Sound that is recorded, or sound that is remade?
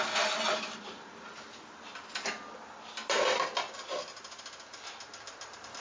recorded